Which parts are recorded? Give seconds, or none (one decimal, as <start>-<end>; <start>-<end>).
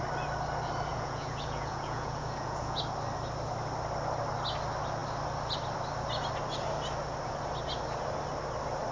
0.0-0.9; 2.8-8.9